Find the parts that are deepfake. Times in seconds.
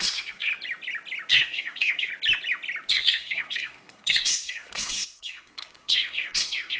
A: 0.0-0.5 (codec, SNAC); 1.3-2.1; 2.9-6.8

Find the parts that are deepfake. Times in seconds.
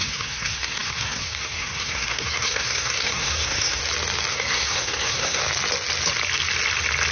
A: 0.0-3.8 (codec, SNAC); 4.3-5.4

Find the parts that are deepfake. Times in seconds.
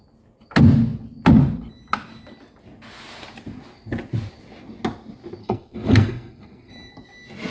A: 5.4-6.7 (codec, SNAC)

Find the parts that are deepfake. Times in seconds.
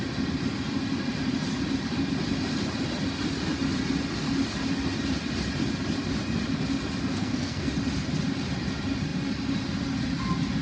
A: 7.1-7.7 (codec, SNAC)